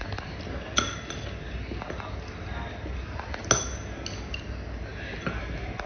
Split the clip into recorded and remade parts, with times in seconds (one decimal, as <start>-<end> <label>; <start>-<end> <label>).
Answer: 0.0-5.9 recorded